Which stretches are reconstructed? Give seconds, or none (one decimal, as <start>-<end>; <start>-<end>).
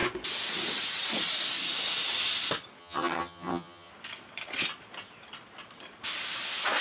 2.8-3.9